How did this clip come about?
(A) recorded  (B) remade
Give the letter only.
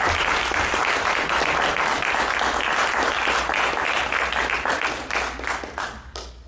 A